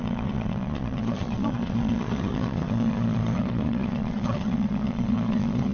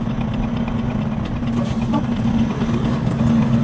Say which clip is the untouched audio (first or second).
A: second